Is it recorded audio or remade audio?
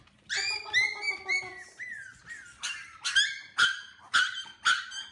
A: recorded